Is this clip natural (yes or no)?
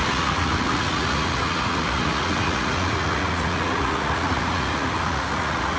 no